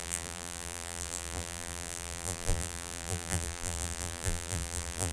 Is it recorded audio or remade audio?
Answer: remade